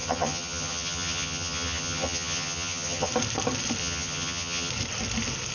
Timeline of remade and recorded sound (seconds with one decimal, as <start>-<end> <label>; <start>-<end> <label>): 0.0-3.1 remade; 3.1-3.8 recorded; 3.8-4.7 remade; 4.7-5.5 recorded